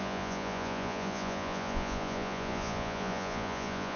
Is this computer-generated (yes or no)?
yes